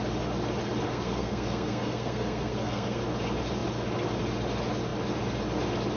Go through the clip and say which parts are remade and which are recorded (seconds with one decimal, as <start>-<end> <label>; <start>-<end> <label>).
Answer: 0.0-0.9 recorded; 0.9-3.0 remade; 3.0-6.0 recorded